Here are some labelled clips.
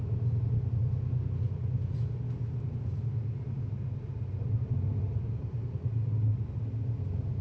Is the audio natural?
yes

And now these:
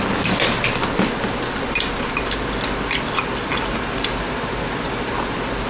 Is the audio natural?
yes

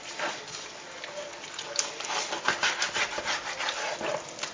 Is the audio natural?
no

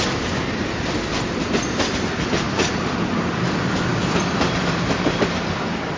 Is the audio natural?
no